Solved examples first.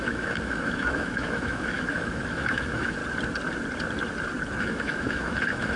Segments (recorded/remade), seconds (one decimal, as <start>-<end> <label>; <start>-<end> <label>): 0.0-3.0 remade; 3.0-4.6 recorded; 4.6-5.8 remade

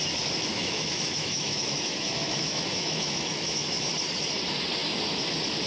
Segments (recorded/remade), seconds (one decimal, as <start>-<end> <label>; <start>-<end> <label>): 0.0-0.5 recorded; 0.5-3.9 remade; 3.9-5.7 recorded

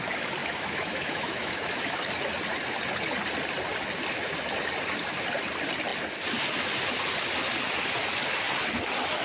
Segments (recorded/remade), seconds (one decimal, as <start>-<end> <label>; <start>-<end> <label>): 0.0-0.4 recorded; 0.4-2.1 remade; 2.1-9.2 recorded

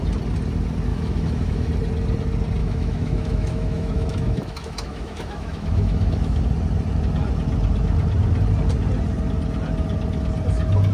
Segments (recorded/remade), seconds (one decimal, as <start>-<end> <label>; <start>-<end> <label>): 0.0-0.9 recorded; 0.9-1.7 remade; 1.7-2.6 recorded; 2.6-6.4 remade; 6.4-10.9 recorded

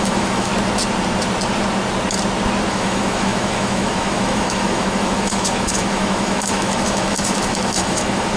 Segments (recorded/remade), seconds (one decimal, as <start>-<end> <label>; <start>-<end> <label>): 0.0-0.5 remade; 0.5-2.7 recorded; 2.7-8.4 remade

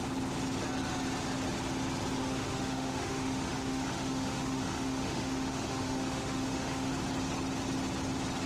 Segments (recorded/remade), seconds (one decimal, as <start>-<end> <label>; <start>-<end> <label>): 0.0-2.2 recorded; 2.2-6.9 remade; 6.9-8.5 recorded

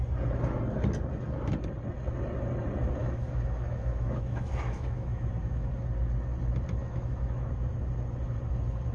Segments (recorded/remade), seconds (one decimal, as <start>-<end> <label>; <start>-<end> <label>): 0.0-3.0 recorded; 3.0-5.7 remade; 5.7-6.8 recorded; 6.8-7.5 remade; 7.5-8.9 recorded